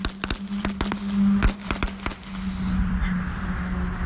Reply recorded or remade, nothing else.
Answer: recorded